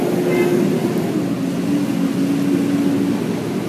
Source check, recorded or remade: recorded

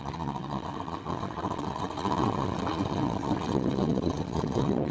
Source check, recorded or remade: remade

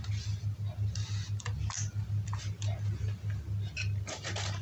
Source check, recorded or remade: recorded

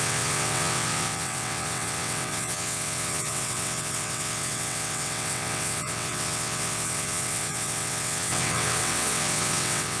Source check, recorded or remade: remade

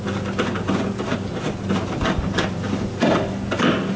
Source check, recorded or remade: recorded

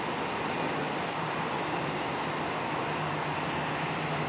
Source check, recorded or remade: recorded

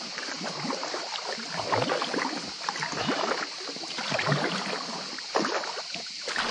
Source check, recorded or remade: recorded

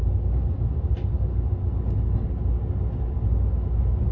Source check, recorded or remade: recorded